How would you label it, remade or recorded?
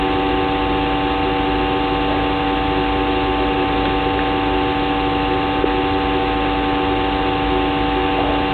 recorded